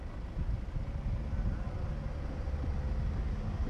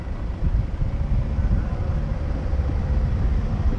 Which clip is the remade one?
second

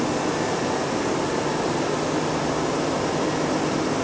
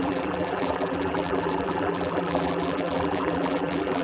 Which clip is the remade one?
second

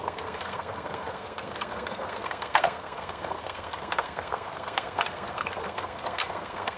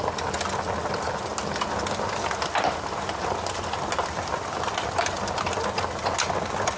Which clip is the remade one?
first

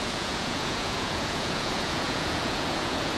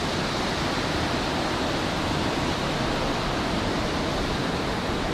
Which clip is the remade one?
first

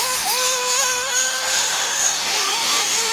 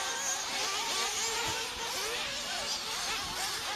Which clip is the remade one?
first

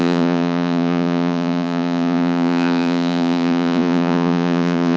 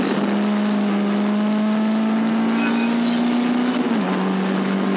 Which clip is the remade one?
first